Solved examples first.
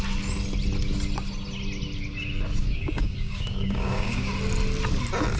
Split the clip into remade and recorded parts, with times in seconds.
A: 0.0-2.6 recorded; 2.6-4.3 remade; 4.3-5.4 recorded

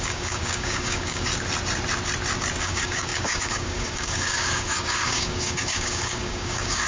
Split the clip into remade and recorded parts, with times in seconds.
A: 0.0-1.3 remade; 1.3-2.6 recorded; 2.6-6.9 remade

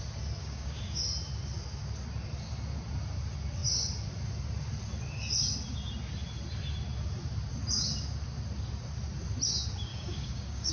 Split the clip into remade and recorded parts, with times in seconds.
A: 0.0-0.4 recorded; 0.4-1.0 remade; 1.0-9.9 recorded; 9.9-10.7 remade